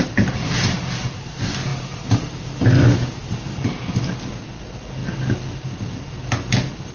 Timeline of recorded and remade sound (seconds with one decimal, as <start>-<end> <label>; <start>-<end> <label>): 0.0-6.9 recorded